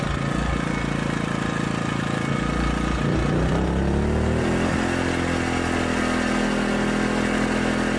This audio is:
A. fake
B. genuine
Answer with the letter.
B